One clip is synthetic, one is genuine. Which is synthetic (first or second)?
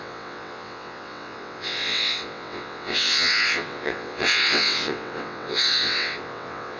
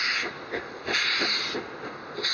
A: first